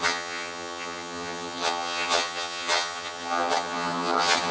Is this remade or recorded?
remade